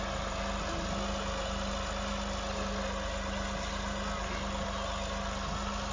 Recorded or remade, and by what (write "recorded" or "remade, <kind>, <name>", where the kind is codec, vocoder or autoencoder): recorded